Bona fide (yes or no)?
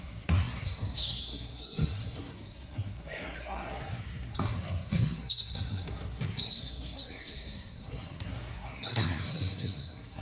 no